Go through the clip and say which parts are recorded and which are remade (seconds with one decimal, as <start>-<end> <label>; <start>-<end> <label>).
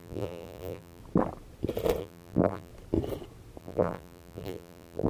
0.0-1.0 remade; 1.0-2.0 recorded; 2.0-2.7 remade; 2.7-3.6 recorded; 3.6-5.1 remade